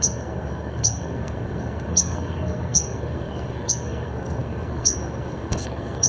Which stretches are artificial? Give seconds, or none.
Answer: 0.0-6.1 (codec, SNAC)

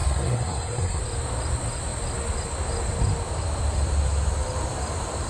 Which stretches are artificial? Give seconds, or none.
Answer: 0.0-1.0 (codec, SNAC)